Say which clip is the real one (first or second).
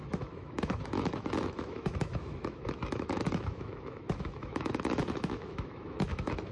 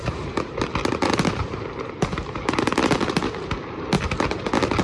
second